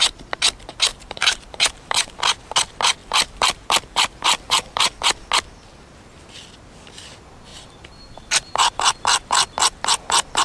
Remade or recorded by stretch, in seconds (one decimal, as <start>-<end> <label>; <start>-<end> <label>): 0.0-0.9 recorded; 0.9-2.2 remade; 2.2-3.0 recorded; 3.0-4.9 remade; 4.9-7.5 recorded; 7.5-8.7 remade; 8.7-10.4 recorded